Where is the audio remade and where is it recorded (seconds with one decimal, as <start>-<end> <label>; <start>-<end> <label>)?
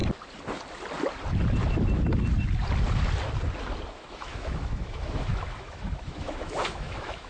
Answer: 0.0-3.9 recorded; 3.9-7.3 remade